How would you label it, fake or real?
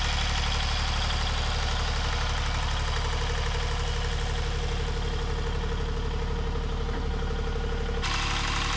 real